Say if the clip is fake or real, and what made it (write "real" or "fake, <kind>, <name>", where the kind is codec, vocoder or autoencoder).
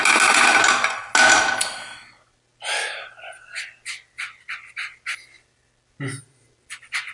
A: real